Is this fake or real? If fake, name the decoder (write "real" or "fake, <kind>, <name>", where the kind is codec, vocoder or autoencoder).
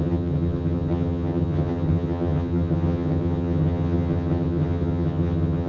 fake, vocoder, HiFi-GAN